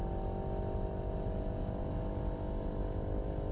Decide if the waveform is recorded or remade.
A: recorded